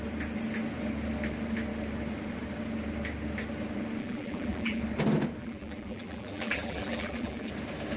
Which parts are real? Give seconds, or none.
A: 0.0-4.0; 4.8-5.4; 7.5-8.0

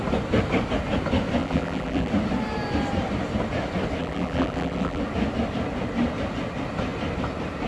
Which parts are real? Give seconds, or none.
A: 0.0-1.4; 2.1-4.0; 5.0-7.7